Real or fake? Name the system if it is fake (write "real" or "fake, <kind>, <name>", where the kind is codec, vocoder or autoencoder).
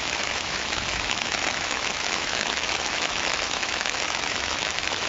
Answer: fake, autoencoder, DAC-VAE